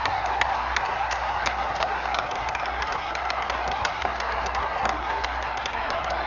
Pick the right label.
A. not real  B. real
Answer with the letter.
A